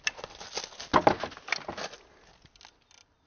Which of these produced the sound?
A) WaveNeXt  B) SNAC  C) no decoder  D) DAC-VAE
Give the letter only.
C